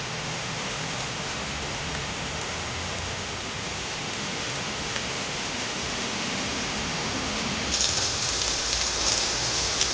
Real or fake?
fake